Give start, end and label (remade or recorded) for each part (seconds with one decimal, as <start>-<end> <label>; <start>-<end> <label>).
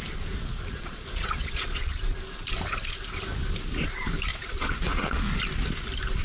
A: 0.0-0.5 recorded; 0.5-1.9 remade; 1.9-4.3 recorded; 4.3-5.2 remade; 5.2-6.2 recorded